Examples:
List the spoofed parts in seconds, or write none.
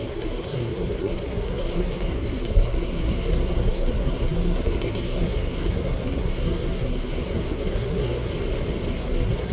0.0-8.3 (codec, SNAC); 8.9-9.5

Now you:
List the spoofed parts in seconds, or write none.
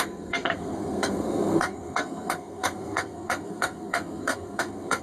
0.0-5.0 (codec, SNAC)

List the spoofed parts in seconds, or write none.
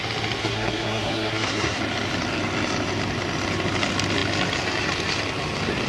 0.4-1.8 (codec, SNAC)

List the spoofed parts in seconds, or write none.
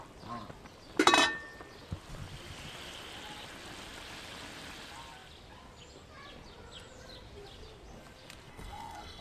8.5-9.2 (codec, SNAC)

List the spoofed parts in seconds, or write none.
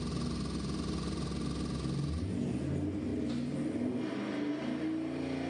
none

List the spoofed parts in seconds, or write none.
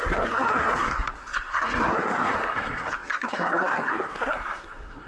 0.0-5.1 (codec, SNAC)